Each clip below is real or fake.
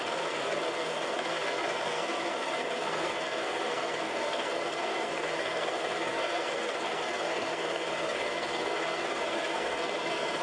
fake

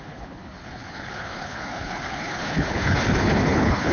fake